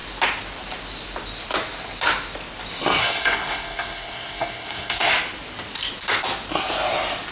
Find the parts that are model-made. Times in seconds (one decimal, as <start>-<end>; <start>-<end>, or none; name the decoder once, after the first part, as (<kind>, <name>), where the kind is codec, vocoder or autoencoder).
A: 3.0-5.1 (codec, SNAC)